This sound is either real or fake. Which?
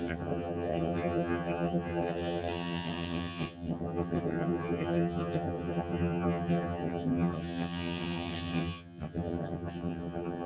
fake